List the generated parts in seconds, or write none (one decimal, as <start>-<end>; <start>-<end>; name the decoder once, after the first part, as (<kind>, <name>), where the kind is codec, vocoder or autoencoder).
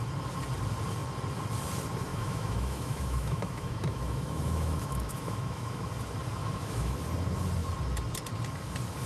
2.1-5.9 (autoencoder, DAC-VAE); 6.4-7.0